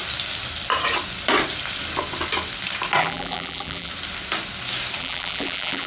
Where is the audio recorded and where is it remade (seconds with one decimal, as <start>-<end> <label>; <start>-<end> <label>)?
0.0-3.0 recorded; 3.0-3.9 remade; 3.9-5.0 recorded; 5.0-5.9 remade